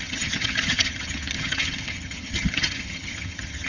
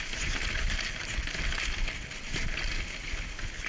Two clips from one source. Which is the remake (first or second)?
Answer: first